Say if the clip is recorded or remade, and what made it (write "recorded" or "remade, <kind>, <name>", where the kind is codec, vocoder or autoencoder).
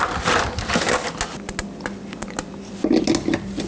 recorded